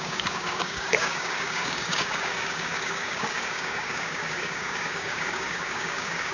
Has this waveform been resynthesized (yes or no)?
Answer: yes